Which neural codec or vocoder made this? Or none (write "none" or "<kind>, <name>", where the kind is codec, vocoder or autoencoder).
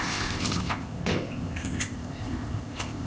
codec, ZipCodec